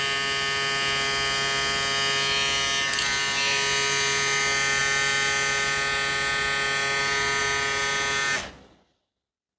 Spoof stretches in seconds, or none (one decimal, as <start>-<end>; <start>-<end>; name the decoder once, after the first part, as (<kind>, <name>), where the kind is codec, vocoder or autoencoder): none